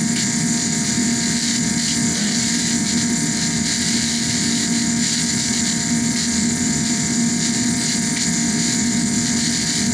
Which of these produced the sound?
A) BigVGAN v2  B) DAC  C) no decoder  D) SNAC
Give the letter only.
C